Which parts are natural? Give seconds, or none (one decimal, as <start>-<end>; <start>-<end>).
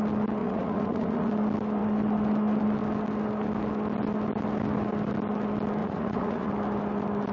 0.0-0.4; 1.3-5.8; 6.5-7.3